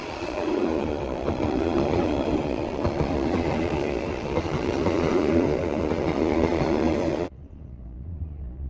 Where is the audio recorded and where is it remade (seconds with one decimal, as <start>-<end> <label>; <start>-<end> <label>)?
0.0-8.7 remade